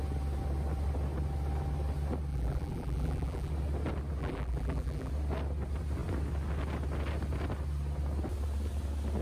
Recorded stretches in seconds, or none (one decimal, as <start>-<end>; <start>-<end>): 0.0-2.3; 3.5-4.2; 5.1-9.2